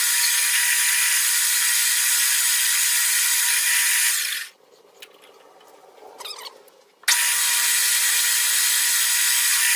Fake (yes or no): no